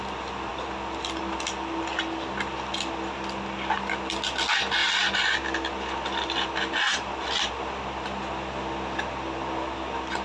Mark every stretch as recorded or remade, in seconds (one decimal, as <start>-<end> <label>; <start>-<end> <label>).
0.0-10.2 recorded